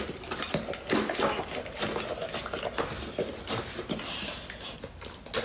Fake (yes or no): no